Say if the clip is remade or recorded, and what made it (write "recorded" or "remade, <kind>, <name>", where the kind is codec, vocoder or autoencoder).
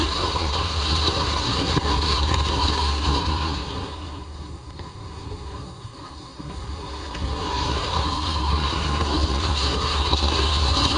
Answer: remade, codec, SNAC